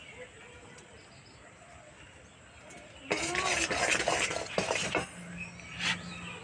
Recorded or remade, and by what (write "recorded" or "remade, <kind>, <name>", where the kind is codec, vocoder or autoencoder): recorded